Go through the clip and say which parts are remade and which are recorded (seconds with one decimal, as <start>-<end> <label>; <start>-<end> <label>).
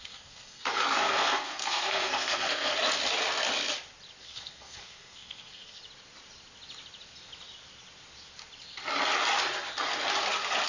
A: 0.0-2.7 remade; 2.7-4.2 recorded; 4.2-5.8 remade; 5.8-10.7 recorded